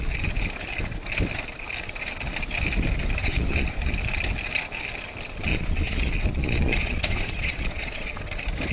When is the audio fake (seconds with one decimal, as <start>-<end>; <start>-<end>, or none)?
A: 3.2-3.9; 5.5-8.2